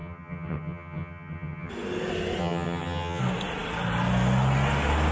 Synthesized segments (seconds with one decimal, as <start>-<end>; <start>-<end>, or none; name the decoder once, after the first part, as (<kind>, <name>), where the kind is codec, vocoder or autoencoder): 0.0-1.7 (vocoder, HiFi-GAN); 2.4-3.2